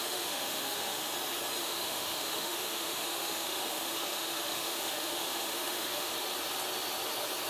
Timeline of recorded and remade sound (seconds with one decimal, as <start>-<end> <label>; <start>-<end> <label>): 0.0-1.1 remade; 1.1-1.6 recorded; 1.6-6.1 remade; 6.1-7.5 recorded